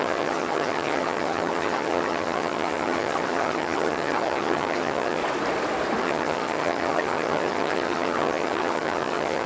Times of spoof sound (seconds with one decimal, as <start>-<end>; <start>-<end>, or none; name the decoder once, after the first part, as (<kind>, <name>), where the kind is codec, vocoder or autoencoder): 0.0-5.2 (vocoder, HiFi-GAN); 6.0-9.5